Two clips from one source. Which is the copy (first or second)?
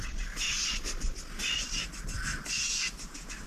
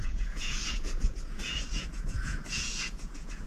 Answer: second